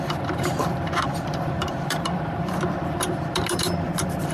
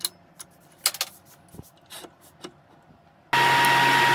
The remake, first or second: first